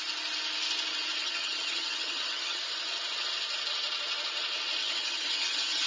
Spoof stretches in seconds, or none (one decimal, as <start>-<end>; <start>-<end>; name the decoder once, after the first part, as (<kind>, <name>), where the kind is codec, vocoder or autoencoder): 1.2-2.6 (vocoder, HiFi-GAN); 4.8-5.9